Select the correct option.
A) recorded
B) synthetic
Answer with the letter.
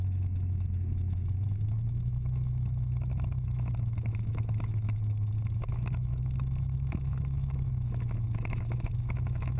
B